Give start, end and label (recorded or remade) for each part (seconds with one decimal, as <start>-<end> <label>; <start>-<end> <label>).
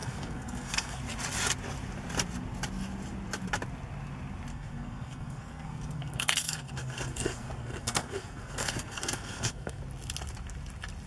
0.0-1.0 remade; 1.0-4.5 recorded; 4.5-9.8 remade; 9.8-11.1 recorded